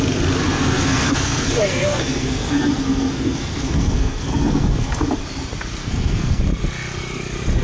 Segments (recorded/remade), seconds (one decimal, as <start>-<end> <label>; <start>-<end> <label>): 0.0-0.4 recorded; 0.4-5.0 remade; 5.0-5.8 recorded; 5.8-6.4 remade; 6.4-7.6 recorded